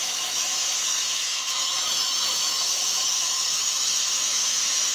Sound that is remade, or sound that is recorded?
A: remade